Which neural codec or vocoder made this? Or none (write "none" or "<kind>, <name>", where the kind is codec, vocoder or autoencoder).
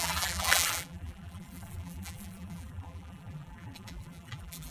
vocoder, BigVGAN v2